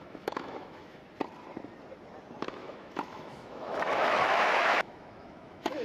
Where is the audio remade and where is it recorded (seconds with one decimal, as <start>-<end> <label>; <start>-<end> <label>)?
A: 0.0-1.0 remade; 1.0-2.4 recorded; 2.4-5.8 remade